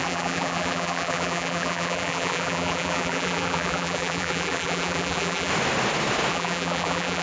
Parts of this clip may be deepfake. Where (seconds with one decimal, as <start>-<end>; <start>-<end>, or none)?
0.0-5.5; 6.3-7.2